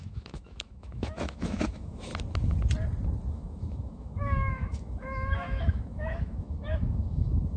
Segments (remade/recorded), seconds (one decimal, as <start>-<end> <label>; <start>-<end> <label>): 0.0-2.1 remade; 2.1-3.3 recorded; 3.3-7.6 remade